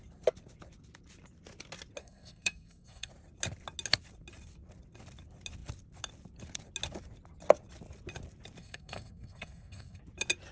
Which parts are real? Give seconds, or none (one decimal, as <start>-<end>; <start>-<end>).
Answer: 0.0-2.0; 3.1-8.6; 10.0-10.5